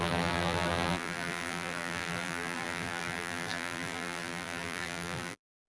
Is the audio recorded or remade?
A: remade